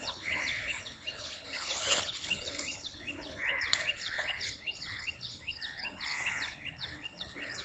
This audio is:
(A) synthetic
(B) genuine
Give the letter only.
A